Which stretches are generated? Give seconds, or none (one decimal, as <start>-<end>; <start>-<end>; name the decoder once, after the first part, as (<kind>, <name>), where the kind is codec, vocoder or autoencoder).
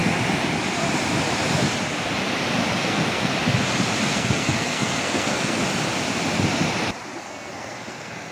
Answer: 2.7-3.3 (codec, SNAC); 4.1-5.6; 7.2-8.3